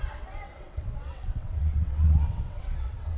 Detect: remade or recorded remade